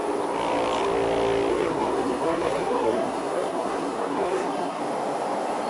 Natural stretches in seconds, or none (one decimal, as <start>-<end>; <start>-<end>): 0.0-1.5; 4.8-5.7